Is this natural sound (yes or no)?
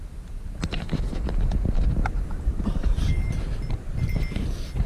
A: yes